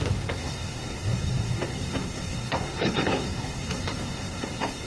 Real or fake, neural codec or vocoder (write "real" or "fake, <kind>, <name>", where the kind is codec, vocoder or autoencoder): fake, codec, SNAC